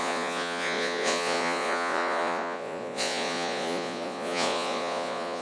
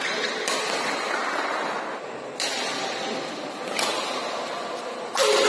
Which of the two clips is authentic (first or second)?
second